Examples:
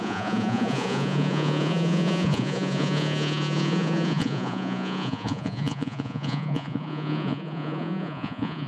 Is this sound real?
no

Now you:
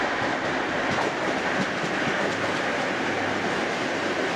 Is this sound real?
yes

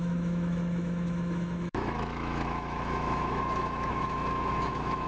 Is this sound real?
no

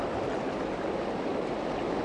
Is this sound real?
yes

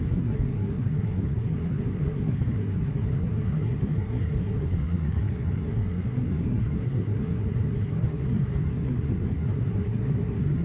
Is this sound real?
no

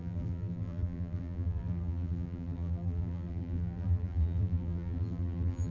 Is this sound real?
no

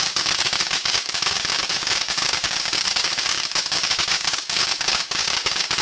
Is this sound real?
no